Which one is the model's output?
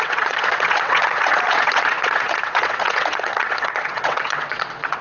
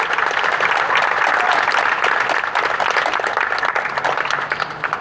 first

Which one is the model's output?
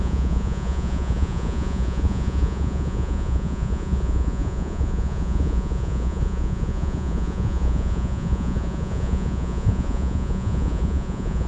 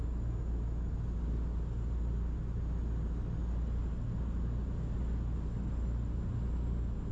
first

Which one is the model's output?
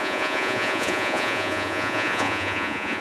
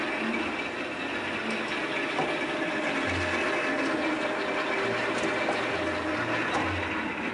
first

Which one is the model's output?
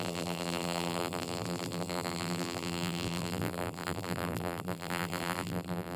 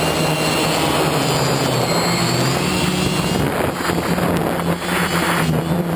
first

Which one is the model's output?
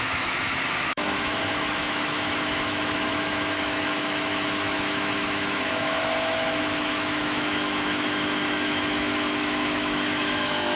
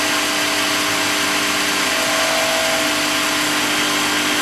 first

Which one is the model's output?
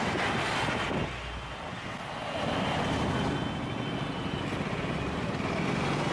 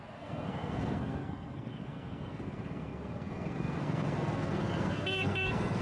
second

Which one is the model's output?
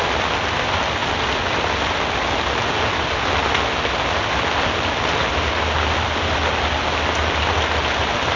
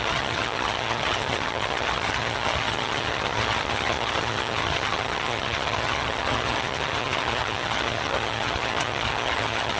second